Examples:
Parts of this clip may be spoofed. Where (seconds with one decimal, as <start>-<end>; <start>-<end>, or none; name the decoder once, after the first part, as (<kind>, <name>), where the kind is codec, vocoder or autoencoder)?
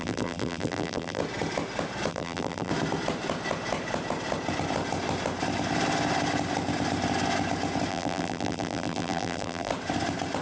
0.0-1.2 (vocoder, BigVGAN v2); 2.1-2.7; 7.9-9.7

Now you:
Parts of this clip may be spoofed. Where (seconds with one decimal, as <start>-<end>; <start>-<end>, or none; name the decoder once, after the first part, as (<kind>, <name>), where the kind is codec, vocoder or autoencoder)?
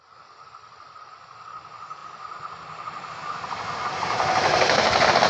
none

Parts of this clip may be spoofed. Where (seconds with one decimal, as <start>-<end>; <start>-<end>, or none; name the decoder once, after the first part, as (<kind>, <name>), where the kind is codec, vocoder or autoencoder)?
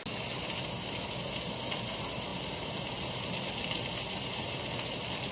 none